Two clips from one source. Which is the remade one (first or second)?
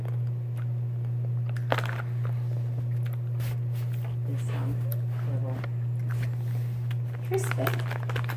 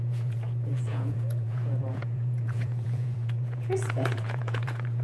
second